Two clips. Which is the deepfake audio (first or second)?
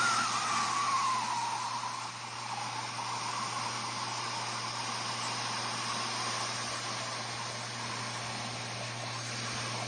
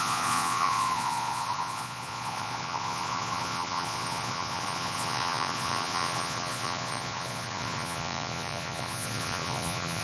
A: second